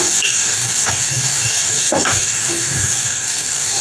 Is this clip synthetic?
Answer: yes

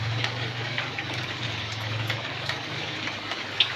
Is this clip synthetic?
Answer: yes